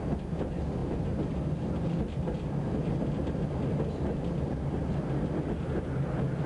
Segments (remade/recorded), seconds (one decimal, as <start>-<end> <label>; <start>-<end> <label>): 0.0-6.5 recorded